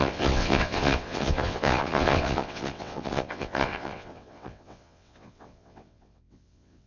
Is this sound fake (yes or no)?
yes